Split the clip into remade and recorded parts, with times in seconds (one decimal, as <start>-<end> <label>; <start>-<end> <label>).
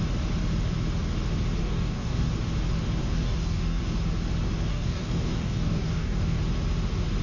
0.0-1.6 recorded; 1.6-2.3 remade; 2.3-3.0 recorded; 3.0-4.0 remade; 4.0-4.7 recorded; 4.7-6.4 remade; 6.4-7.2 recorded